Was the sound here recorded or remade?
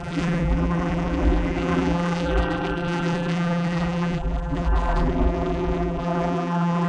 remade